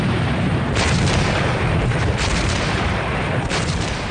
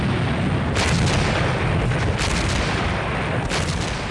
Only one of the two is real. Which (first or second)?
second